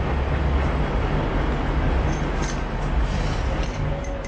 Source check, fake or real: real